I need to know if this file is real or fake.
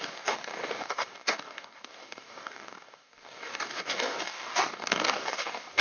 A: fake